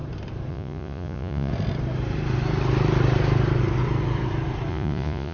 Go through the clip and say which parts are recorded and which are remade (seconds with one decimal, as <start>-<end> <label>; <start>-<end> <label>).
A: 0.0-0.5 recorded; 0.5-1.5 remade; 1.5-4.7 recorded; 4.7-5.3 remade